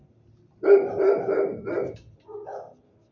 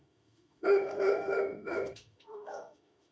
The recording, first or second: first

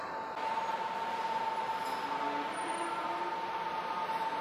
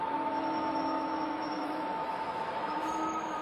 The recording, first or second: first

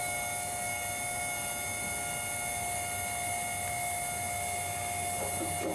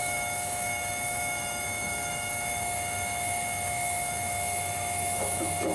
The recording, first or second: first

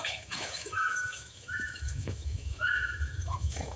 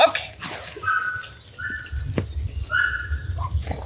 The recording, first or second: second